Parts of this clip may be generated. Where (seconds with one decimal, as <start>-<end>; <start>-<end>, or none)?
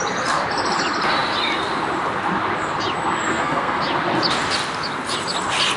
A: 3.3-3.8